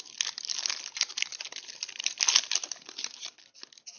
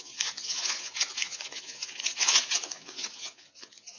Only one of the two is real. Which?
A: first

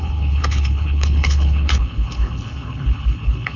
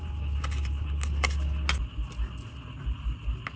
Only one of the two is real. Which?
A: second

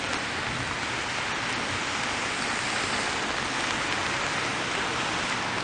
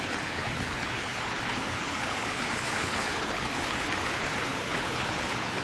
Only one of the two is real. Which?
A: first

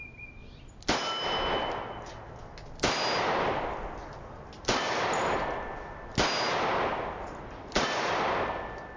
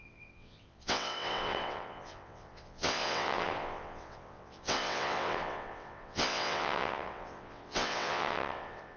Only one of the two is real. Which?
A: first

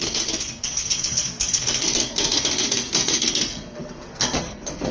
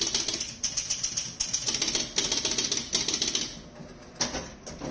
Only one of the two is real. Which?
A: second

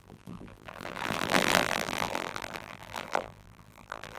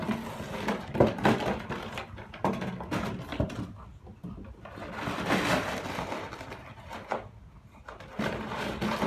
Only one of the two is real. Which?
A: second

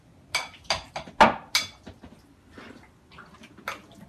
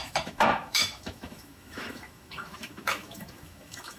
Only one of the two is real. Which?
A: first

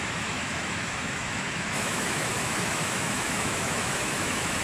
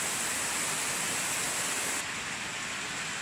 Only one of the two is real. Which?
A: second